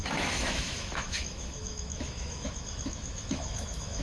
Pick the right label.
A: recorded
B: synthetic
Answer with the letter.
B